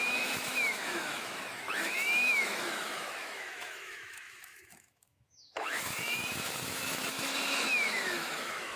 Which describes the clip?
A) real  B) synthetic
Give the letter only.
B